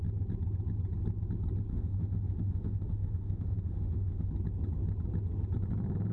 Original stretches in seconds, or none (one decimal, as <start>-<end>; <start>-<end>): 0.0-1.7; 4.3-6.1